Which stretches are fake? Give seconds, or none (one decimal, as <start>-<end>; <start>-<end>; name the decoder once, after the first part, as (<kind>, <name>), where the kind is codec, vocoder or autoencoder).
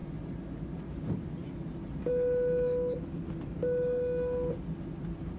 none